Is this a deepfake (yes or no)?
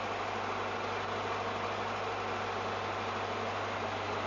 no